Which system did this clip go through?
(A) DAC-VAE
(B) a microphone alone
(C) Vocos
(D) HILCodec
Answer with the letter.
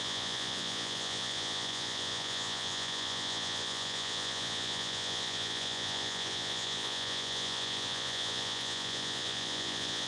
C